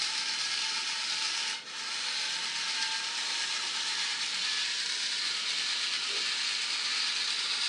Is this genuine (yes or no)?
yes